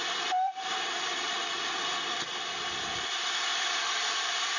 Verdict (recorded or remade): remade